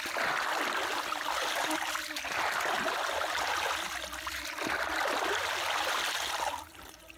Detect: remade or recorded recorded